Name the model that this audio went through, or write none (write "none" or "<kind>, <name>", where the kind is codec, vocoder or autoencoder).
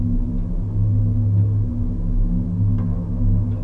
none